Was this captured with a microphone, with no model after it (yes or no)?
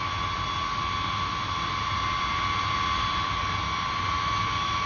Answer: yes